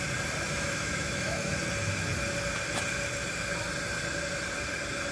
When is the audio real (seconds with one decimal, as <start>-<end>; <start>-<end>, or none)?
0.0-0.5; 1.6-5.1